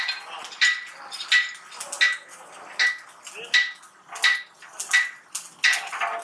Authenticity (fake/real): real